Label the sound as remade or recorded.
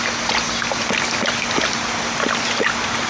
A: recorded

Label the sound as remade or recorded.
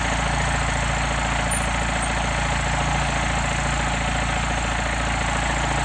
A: recorded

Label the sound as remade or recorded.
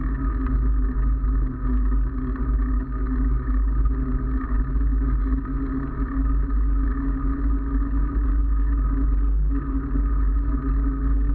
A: recorded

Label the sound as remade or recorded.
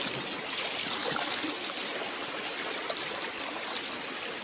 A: recorded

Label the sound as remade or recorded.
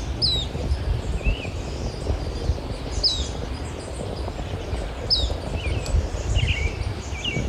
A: recorded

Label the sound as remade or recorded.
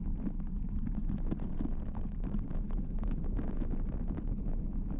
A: recorded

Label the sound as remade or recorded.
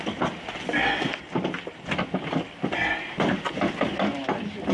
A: recorded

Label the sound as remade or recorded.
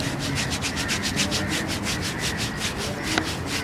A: recorded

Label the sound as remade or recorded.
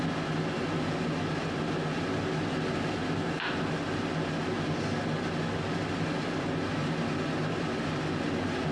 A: recorded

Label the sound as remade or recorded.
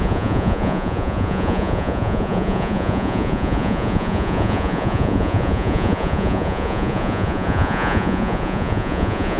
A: remade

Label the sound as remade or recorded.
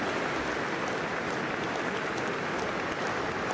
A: recorded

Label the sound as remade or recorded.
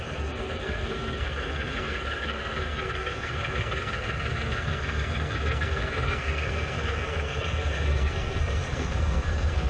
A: remade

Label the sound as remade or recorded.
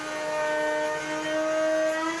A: recorded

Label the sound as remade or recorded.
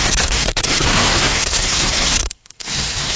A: remade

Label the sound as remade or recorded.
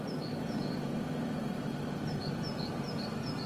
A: remade